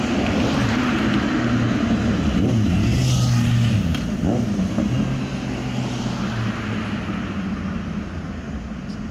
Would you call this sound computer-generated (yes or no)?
no